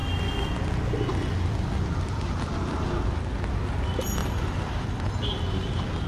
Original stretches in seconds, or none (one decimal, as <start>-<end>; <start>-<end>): 0.0-4.2; 5.1-6.1